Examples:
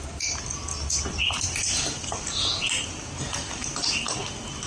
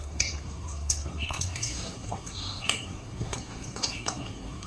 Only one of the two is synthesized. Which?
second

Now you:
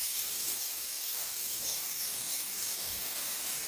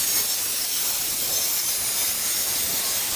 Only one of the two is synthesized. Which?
first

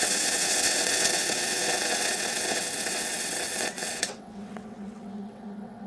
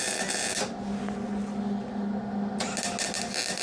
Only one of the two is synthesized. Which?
first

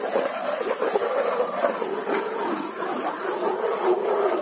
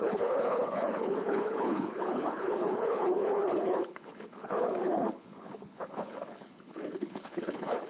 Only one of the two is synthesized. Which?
second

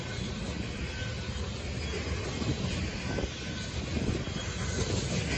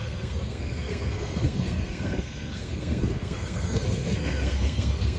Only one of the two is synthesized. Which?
second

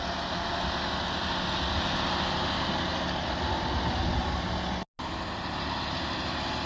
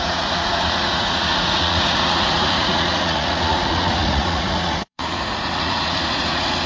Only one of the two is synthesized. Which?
second